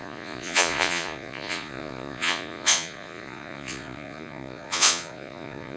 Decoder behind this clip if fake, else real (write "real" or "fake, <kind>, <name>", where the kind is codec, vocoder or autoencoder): fake, vocoder, Vocos